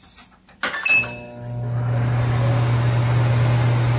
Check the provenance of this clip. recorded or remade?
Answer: recorded